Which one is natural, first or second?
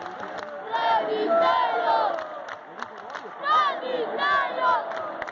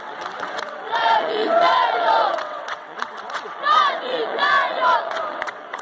first